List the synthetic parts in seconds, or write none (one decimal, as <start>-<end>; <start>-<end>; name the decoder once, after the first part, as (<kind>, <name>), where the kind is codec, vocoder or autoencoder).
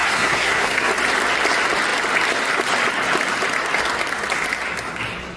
0.0-0.9 (codec, SNAC)